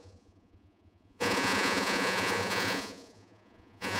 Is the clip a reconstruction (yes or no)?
yes